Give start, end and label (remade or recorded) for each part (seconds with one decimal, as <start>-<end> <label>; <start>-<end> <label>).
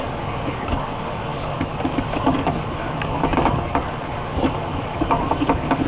0.0-5.9 remade